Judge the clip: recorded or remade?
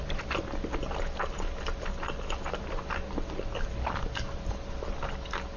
recorded